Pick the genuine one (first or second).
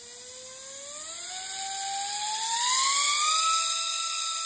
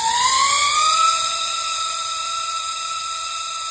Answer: first